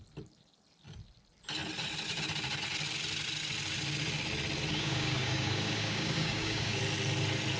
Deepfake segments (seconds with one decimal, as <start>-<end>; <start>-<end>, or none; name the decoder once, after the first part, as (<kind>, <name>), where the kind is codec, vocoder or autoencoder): 4.7-6.8 (codec, DAC)